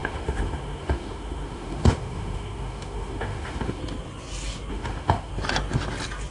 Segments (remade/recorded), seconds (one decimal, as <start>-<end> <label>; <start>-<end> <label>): 0.0-3.8 remade; 3.8-4.7 recorded; 4.7-5.3 remade; 5.3-6.3 recorded